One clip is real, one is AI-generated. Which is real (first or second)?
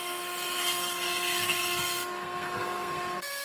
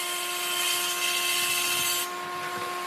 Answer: second